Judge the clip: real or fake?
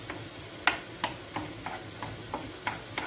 real